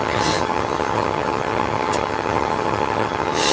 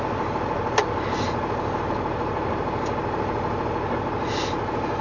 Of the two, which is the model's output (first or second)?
first